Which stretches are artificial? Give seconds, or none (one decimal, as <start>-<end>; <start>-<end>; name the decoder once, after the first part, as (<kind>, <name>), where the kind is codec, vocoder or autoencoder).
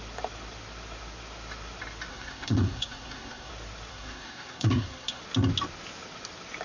2.1-3.5 (codec, SNAC); 3.9-5.2